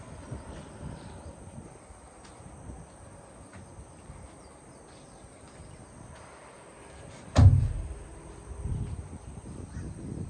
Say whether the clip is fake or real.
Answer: real